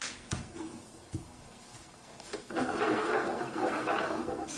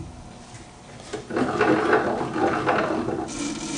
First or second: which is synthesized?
first